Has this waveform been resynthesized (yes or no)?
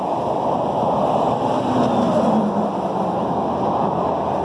no